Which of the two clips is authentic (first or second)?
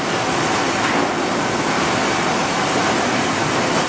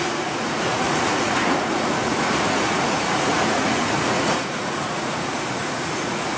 first